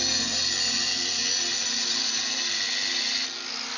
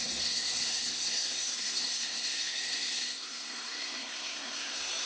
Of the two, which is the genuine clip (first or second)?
first